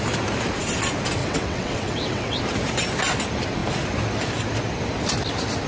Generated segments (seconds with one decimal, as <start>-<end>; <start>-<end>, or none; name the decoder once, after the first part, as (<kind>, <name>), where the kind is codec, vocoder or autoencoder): 1.2-2.4 (vocoder, WaveNeXt)